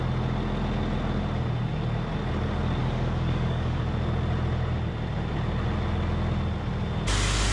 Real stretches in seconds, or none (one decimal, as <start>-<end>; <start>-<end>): 0.0-2.8; 3.8-7.5